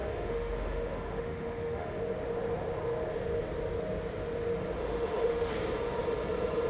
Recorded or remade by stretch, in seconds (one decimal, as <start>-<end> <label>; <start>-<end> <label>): 0.0-2.0 remade; 2.0-4.8 recorded; 4.8-5.5 remade; 5.5-6.7 recorded